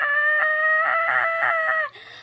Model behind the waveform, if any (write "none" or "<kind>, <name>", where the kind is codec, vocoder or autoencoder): none